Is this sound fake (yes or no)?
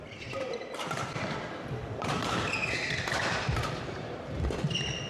yes